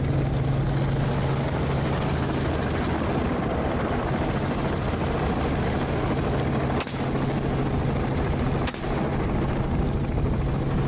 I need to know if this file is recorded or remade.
recorded